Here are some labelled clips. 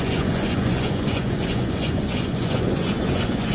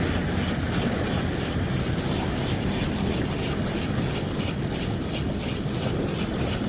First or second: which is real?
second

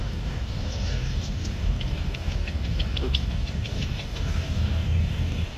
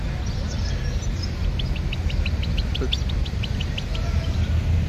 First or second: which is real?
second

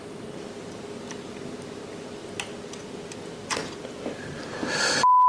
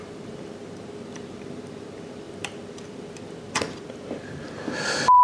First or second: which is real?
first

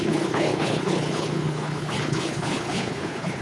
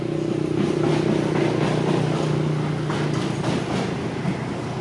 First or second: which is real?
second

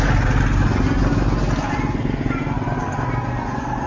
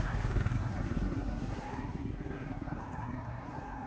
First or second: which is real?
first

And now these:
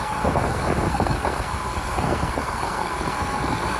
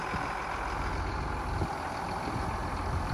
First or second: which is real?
second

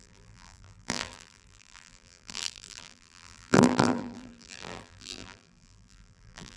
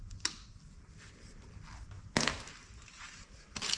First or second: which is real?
second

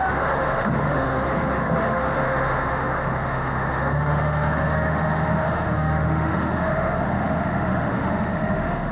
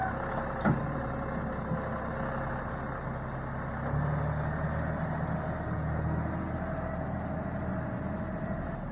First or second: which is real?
second